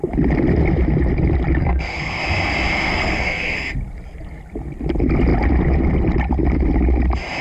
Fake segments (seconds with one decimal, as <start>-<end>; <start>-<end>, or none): 1.6-2.2; 2.9-3.7